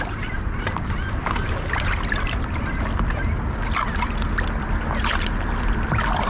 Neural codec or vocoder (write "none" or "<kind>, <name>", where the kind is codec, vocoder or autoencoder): vocoder, BigVGAN v2